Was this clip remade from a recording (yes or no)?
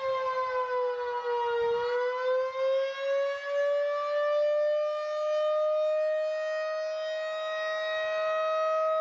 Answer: no